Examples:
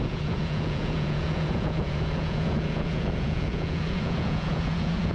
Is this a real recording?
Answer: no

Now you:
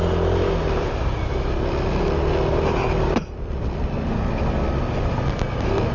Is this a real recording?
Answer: yes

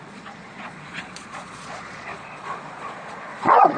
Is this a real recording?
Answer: no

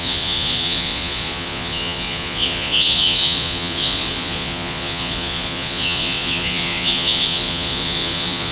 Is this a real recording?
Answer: no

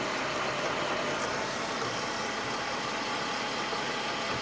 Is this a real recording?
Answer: yes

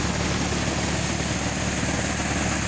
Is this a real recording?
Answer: yes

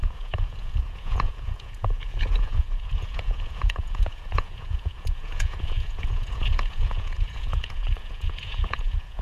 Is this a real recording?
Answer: no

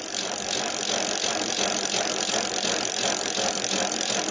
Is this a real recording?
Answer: yes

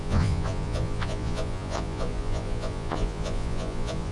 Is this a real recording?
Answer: no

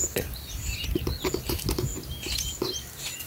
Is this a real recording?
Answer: yes